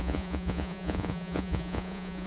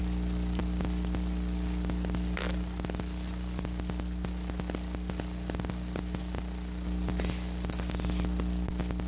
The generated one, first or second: first